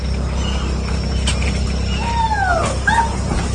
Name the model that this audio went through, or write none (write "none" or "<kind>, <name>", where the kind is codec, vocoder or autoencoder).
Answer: none